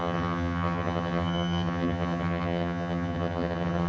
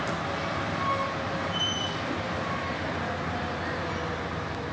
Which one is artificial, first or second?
first